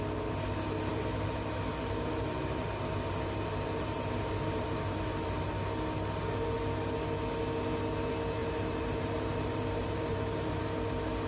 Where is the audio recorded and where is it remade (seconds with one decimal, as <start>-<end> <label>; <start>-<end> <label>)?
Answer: 0.0-0.9 recorded; 0.9-5.5 remade; 5.5-8.4 recorded; 8.4-10.6 remade; 10.6-11.3 recorded